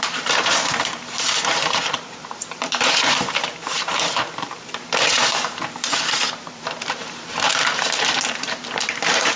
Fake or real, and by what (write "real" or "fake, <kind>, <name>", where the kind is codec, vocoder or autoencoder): fake, vocoder, BigVGAN v2